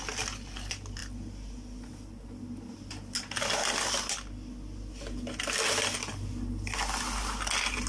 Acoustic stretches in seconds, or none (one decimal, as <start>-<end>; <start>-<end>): 0.0-7.9